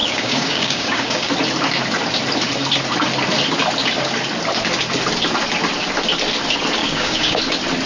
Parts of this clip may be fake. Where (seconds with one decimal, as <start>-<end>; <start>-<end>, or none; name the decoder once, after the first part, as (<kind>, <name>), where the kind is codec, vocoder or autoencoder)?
0.0-1.3 (codec, DAC); 6.8-7.4